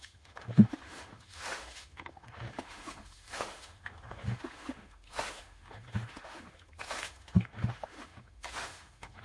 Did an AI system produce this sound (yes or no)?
yes